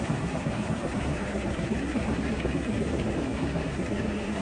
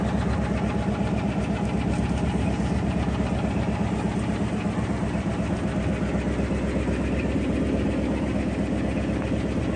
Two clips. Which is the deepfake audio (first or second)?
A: first